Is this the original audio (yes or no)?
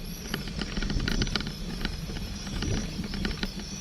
yes